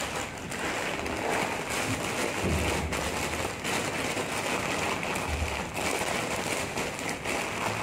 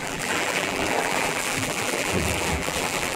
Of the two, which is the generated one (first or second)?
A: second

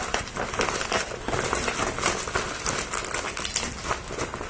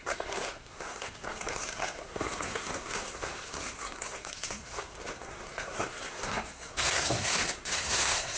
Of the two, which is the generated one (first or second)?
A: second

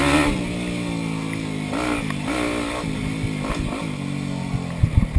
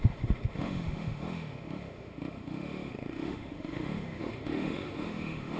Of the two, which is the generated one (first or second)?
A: second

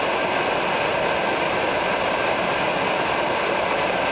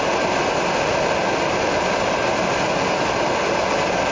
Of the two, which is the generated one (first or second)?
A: first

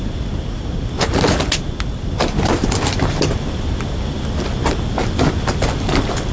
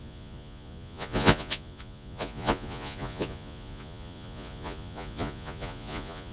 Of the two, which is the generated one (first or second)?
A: second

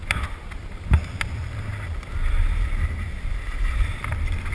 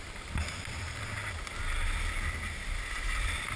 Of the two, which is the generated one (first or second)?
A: first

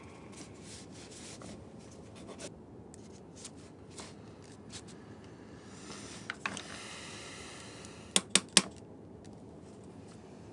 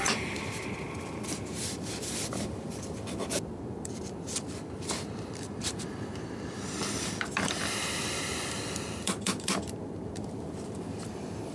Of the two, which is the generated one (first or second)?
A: second